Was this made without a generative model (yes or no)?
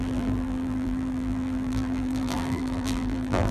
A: no